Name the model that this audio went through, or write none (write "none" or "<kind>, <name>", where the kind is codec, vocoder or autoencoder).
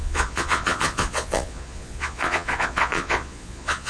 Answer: vocoder, Vocos